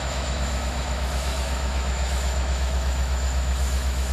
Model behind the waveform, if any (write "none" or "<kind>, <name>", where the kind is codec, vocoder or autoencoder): autoencoder, DAC-VAE